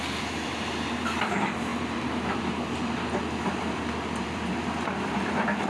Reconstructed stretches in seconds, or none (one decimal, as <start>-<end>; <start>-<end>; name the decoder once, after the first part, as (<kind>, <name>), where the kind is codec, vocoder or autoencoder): 0.0-5.7 (vocoder, BigVGAN v2)